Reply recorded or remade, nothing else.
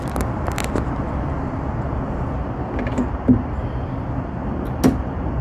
recorded